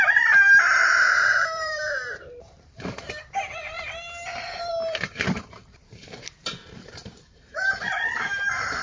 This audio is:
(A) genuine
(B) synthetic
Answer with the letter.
B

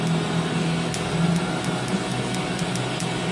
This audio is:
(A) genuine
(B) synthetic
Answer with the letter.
A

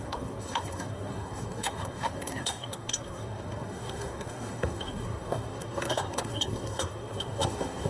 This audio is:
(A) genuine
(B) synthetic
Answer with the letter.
B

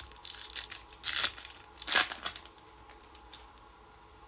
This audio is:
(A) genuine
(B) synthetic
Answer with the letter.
B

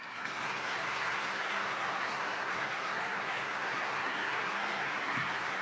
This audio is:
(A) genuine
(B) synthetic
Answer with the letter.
B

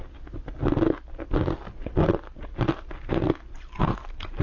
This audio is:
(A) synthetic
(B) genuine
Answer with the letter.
B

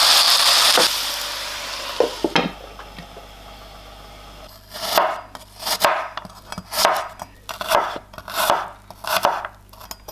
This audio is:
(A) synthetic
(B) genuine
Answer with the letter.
B